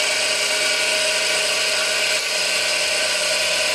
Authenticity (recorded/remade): recorded